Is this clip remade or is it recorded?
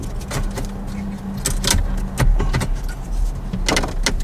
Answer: recorded